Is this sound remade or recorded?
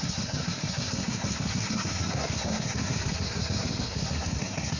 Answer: remade